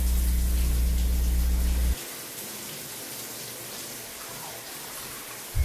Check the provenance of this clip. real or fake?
real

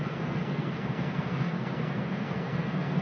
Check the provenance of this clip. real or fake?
fake